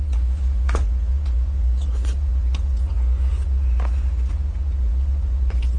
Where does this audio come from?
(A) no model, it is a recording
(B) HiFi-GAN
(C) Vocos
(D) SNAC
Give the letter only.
C